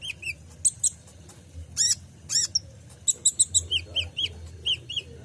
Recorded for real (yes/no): yes